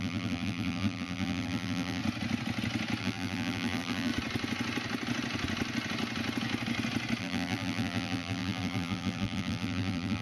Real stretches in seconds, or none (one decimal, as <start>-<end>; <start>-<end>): 2.0-3.0; 4.1-7.2